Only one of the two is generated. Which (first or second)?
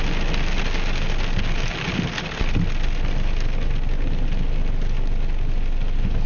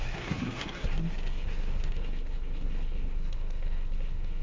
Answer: second